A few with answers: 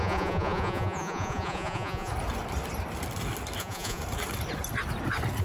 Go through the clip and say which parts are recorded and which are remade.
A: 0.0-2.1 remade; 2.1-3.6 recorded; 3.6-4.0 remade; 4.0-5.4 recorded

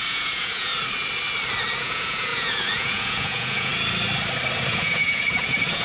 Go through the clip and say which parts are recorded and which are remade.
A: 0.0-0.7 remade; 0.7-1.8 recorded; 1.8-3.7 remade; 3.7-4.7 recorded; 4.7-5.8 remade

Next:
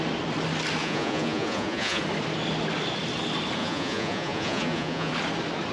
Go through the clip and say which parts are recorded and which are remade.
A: 0.0-0.8 recorded; 0.8-2.0 remade; 2.0-3.6 recorded; 3.6-5.1 remade; 5.1-5.7 recorded

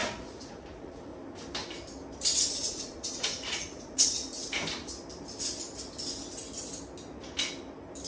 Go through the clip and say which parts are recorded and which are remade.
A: 0.0-1.1 remade; 1.1-2.5 recorded; 2.5-4.4 remade; 4.4-8.1 recorded